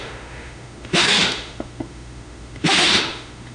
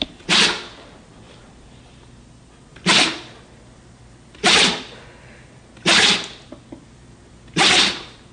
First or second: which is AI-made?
first